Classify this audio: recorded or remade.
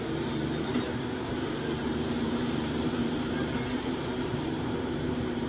remade